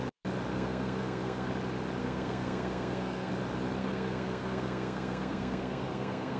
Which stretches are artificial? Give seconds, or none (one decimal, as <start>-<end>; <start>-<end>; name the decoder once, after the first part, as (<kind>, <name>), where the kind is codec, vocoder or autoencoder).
0.5-1.5 (codec, SNAC); 2.0-3.3; 3.8-6.4

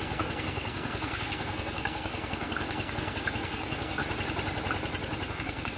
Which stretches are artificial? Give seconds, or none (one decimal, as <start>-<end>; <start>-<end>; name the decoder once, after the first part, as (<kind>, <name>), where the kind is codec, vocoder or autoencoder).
0.0-4.0 (codec, SNAC); 5.3-5.8

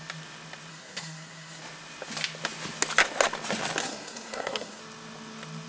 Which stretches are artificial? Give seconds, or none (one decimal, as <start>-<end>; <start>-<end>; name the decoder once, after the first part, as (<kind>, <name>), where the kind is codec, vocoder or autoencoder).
0.7-1.6 (codec, SNAC); 3.8-4.8